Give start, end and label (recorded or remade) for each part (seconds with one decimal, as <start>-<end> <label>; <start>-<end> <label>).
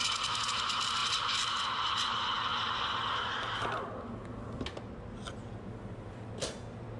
0.0-7.0 recorded